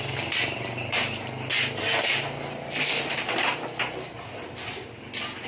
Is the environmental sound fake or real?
real